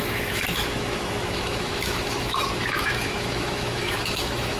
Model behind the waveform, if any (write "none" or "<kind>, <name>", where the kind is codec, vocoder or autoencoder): autoencoder, DAC-VAE